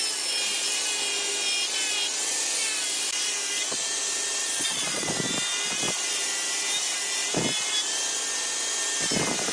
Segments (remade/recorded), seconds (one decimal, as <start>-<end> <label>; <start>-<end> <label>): 0.0-4.4 recorded; 4.4-5.1 remade; 5.1-9.5 recorded

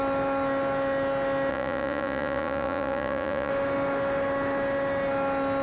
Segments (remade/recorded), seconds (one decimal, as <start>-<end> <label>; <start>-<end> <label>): 0.0-1.5 recorded; 1.5-3.5 remade; 3.5-5.6 recorded

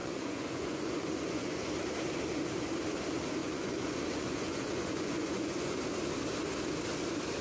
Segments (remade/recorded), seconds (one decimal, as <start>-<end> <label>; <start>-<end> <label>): 0.0-1.7 remade; 1.7-3.4 recorded; 3.4-5.8 remade; 5.8-7.4 recorded

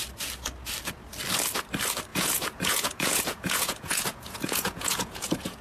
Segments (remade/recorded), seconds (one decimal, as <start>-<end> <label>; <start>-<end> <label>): 0.0-2.1 recorded; 2.1-5.6 remade

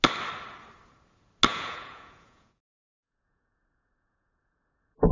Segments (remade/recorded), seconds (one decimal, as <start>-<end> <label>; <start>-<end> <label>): 0.0-1.5 recorded; 1.5-2.6 remade; 2.6-3.0 recorded; 3.0-5.1 remade

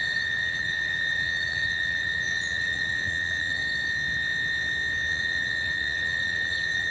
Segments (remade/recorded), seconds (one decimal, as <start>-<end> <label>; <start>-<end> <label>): 0.0-3.6 remade; 3.6-5.1 recorded; 5.1-6.9 remade

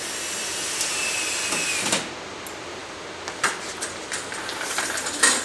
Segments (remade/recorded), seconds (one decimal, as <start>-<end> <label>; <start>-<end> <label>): 0.0-5.4 recorded